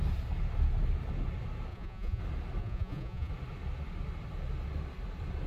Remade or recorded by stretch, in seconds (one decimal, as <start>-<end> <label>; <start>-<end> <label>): 0.0-1.7 recorded; 1.7-2.2 remade; 2.2-2.6 recorded; 2.6-3.3 remade; 3.3-5.5 recorded